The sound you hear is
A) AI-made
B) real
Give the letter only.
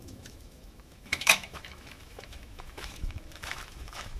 A